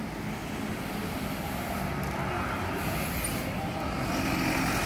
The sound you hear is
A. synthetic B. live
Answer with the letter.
B